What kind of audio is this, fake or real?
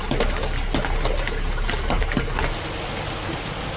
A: real